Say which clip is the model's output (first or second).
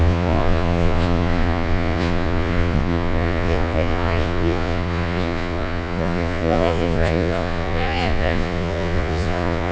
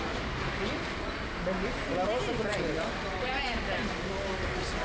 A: first